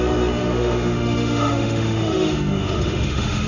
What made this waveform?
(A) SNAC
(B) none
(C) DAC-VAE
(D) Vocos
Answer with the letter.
C